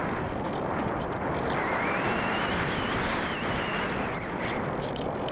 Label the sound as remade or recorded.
recorded